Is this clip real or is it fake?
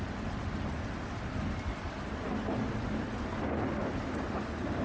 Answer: real